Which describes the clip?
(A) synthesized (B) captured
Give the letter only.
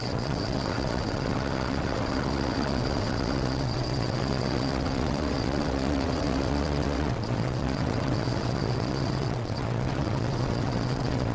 A